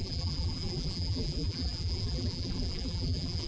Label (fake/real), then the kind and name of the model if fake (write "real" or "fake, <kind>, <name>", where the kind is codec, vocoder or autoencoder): fake, vocoder, BigVGAN v2